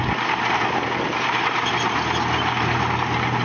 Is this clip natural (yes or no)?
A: yes